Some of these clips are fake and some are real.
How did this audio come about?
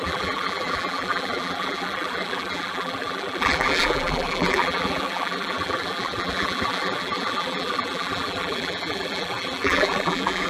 fake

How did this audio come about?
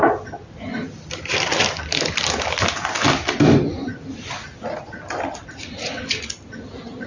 real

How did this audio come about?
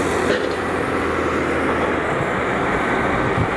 real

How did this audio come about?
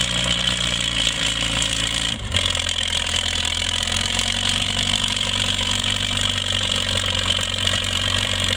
fake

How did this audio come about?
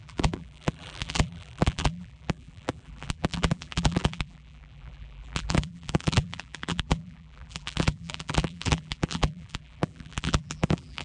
fake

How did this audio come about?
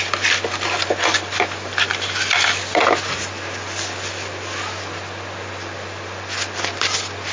real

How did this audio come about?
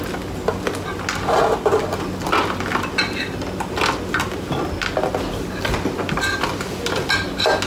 real